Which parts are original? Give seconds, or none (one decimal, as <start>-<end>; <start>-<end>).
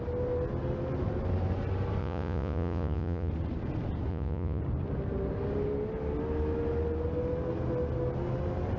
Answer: 0.0-2.0; 3.3-4.1; 4.6-8.8